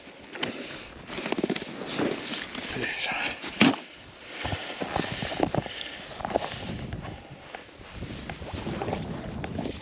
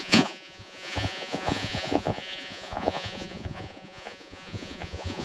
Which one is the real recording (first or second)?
first